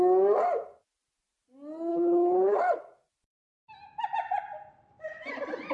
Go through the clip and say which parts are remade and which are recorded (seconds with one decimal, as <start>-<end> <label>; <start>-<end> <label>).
0.0-1.9 recorded; 1.9-2.6 remade; 2.6-5.7 recorded